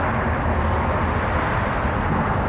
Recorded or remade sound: recorded